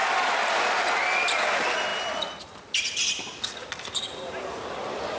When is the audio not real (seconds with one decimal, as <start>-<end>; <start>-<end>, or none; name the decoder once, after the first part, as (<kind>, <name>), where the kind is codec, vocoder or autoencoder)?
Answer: none